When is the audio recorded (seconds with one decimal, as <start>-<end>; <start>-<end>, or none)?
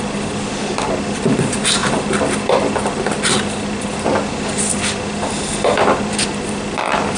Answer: 0.0-7.2